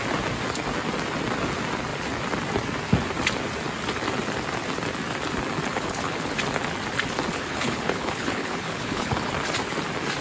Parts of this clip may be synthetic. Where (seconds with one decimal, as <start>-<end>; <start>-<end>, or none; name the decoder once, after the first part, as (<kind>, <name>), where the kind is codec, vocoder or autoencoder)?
5.7-6.4 (codec, HILCodec); 7.3-9.3